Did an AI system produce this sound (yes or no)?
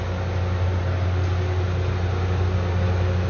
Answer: no